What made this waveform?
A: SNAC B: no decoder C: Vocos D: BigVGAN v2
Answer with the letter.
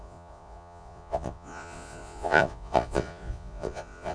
C